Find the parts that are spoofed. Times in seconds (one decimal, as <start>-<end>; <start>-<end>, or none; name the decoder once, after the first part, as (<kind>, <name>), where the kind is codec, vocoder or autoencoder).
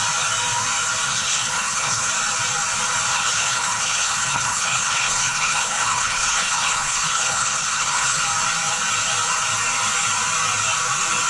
1.1-2.1 (codec, HILCodec); 3.1-8.2